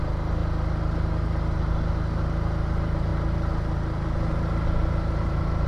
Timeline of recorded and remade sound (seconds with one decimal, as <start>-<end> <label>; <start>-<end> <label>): 0.0-5.7 recorded